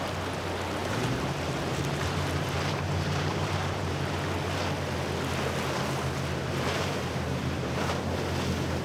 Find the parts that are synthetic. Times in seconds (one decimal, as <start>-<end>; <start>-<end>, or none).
0.8-4.0; 6.4-7.9